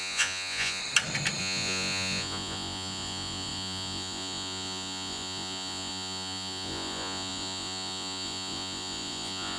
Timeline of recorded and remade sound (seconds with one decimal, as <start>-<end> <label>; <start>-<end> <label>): 0.0-0.8 remade; 0.8-1.4 recorded; 1.4-9.6 remade